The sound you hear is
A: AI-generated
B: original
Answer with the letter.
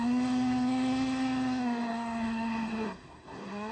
A